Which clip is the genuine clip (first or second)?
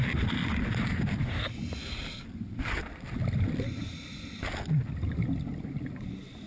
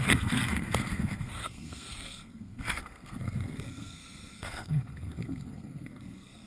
first